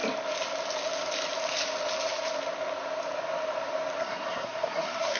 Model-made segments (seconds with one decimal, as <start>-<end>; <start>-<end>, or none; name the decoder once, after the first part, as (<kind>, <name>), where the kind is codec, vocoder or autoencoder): 4.0-5.2 (codec, SNAC)